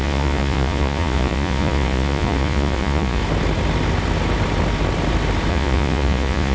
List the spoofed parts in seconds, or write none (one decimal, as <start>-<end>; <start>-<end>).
0.0-3.2; 5.5-6.5